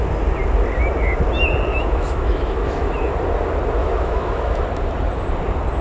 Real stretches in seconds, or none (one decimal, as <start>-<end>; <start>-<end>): 0.0-1.7; 2.9-3.8; 4.6-5.8